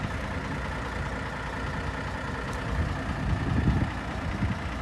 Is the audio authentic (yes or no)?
yes